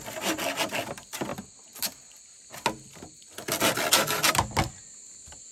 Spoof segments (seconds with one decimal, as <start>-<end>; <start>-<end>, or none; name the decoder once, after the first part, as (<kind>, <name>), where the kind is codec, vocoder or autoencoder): none